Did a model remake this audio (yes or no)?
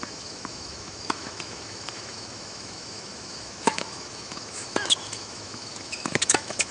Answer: yes